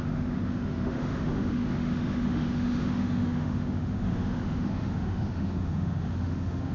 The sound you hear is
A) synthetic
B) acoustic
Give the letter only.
A